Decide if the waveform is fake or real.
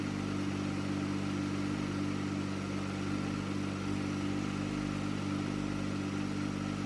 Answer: real